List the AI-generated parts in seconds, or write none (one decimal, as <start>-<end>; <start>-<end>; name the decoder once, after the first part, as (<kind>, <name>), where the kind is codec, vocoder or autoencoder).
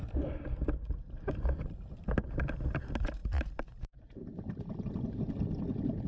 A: 0.0-3.2 (vocoder, BigVGAN v2)